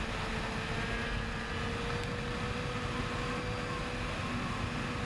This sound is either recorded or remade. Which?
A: recorded